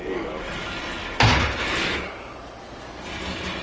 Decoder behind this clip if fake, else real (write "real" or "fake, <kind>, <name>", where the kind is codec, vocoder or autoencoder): real